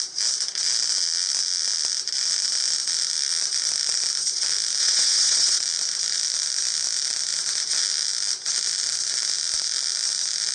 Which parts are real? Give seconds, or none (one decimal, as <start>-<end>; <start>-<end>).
0.0-4.8; 5.6-10.5